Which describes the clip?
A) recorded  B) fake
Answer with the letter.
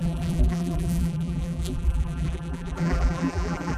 B